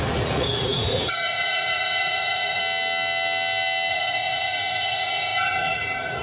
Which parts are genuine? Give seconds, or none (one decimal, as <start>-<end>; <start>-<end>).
2.6-3.9